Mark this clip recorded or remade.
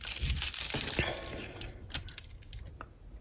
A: recorded